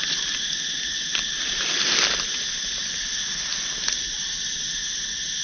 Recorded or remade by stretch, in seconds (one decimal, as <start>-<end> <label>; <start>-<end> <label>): 0.0-5.4 recorded